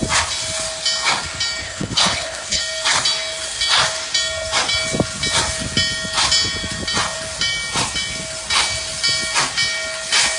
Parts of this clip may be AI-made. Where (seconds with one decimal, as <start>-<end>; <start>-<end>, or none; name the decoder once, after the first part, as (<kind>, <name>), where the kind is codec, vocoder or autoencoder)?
1.6-2.6 (codec, HILCodec)